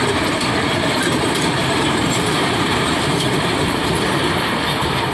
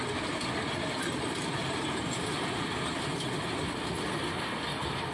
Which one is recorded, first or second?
second